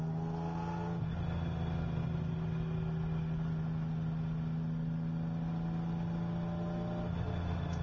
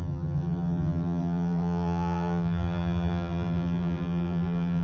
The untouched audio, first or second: first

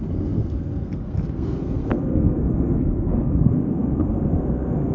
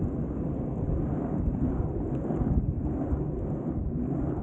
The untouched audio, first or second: second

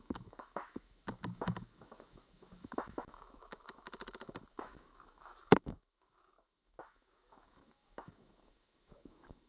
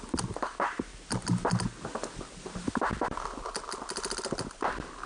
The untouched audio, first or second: second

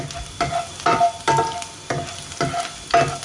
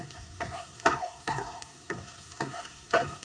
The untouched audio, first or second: first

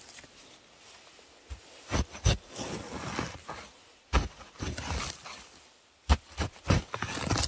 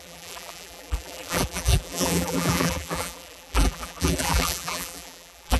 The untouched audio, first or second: first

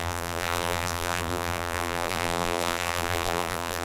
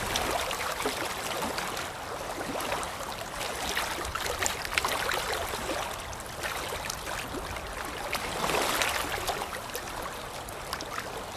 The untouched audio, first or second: second